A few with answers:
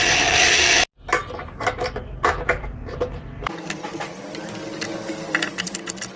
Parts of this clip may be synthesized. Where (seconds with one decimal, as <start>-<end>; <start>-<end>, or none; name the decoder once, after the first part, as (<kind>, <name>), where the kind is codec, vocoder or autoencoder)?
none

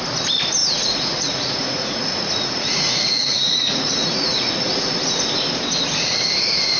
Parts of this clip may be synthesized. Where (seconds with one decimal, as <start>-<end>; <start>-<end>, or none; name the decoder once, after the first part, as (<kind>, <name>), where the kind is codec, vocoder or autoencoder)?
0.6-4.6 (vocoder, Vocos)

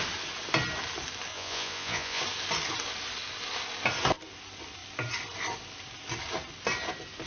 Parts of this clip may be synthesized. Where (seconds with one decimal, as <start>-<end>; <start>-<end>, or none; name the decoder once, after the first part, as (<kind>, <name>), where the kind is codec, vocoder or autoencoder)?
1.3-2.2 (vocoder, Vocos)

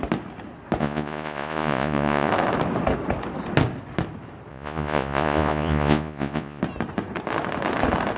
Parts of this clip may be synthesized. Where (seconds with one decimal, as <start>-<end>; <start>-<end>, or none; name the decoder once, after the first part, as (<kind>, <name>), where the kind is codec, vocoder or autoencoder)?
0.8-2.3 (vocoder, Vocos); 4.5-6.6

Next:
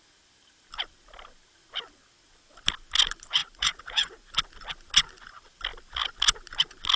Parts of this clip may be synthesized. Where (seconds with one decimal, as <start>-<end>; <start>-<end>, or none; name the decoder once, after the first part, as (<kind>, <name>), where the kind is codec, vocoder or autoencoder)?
3.4-4.3 (vocoder, Vocos)

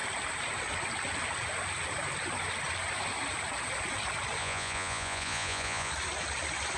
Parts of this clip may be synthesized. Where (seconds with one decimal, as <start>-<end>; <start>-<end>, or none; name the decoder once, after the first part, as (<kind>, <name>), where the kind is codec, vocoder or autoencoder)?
4.4-5.9 (vocoder, Vocos)

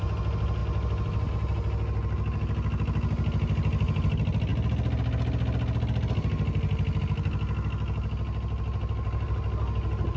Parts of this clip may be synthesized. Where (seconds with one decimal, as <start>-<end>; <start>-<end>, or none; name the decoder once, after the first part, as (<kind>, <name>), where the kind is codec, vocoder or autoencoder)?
none

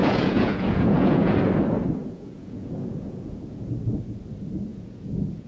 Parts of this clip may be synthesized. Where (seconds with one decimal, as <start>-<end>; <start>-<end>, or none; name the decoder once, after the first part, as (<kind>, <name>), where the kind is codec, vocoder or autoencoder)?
0.0-1.5 (vocoder, Vocos); 2.0-3.7; 4.7-5.5